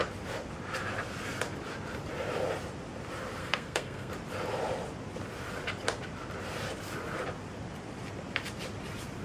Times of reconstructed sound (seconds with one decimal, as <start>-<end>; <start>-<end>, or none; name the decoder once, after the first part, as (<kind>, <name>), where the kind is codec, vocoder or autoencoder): 3.4-4.1 (codec, SNAC)